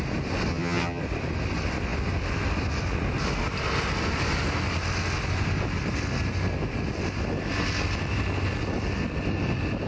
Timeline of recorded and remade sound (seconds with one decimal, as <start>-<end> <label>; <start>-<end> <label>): 0.0-0.5 recorded; 0.5-1.0 remade; 1.0-9.9 recorded